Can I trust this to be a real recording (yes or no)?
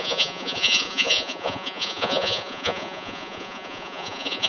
no